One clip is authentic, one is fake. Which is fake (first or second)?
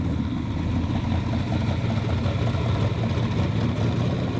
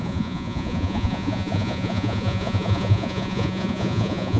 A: second